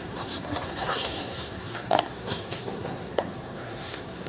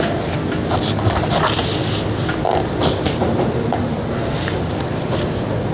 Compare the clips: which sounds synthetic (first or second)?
first